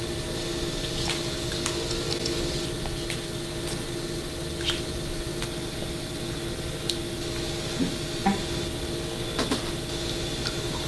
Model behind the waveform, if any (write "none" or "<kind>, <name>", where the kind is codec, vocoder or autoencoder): none